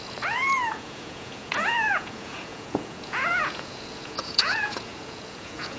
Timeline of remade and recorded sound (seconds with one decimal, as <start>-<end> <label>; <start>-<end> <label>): 0.0-5.8 remade